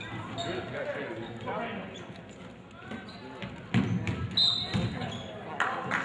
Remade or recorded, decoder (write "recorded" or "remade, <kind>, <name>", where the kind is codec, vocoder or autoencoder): recorded